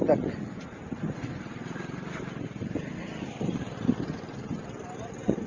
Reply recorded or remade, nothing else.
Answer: recorded